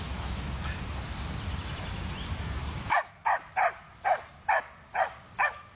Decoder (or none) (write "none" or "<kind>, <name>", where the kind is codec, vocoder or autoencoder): none